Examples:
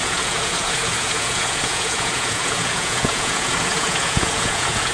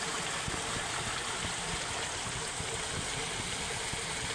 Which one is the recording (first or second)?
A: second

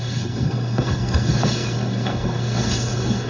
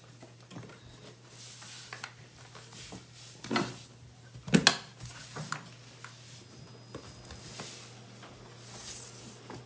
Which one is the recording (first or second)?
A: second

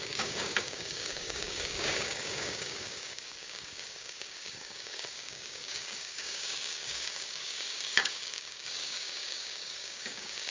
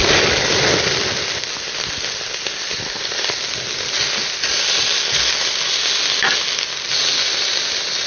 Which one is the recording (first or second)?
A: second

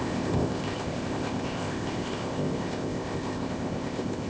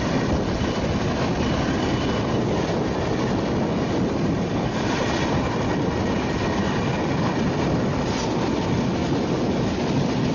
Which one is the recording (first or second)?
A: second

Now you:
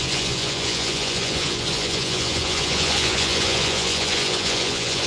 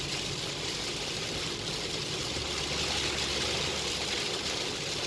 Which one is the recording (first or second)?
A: second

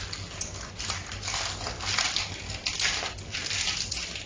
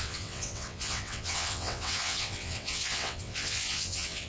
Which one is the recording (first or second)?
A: first